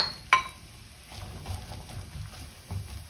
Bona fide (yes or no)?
yes